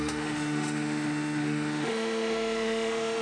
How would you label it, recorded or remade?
remade